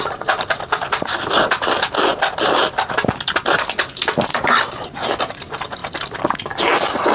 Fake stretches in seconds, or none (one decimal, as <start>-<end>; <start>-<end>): 2.1-4.4; 5.8-6.4